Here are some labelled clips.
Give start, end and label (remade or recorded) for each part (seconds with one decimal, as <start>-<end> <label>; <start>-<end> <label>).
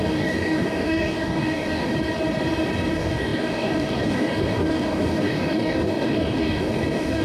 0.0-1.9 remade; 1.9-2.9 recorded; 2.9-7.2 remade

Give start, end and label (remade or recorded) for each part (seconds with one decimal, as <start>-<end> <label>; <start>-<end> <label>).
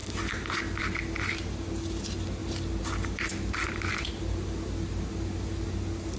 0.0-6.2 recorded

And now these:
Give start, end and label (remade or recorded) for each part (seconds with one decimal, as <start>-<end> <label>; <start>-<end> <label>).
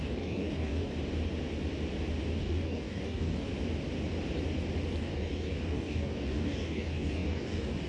0.0-0.9 remade; 0.9-2.4 recorded; 2.4-3.5 remade; 3.5-5.0 recorded; 5.0-7.9 remade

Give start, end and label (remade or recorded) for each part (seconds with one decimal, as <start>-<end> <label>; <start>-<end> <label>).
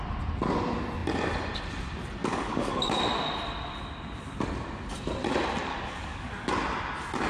0.0-2.2 recorded; 2.2-3.0 remade; 3.0-5.7 recorded; 5.7-6.5 remade; 6.5-7.3 recorded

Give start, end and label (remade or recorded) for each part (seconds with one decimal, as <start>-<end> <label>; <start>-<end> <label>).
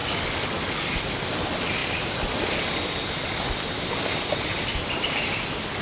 0.0-5.8 recorded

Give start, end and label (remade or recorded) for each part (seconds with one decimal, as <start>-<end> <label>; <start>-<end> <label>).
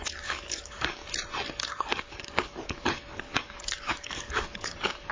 0.0-1.0 remade; 1.0-1.6 recorded; 1.6-5.1 remade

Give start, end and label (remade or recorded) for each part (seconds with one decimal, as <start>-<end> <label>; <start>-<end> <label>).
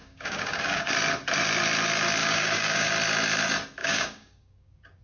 0.0-0.9 remade; 0.9-2.2 recorded; 2.2-2.9 remade; 2.9-3.8 recorded; 3.8-5.0 remade